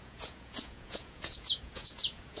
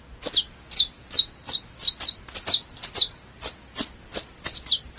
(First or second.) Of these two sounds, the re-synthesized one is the first